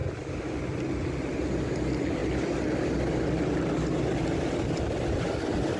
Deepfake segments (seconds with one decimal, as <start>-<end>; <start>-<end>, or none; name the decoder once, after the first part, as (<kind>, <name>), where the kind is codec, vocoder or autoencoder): none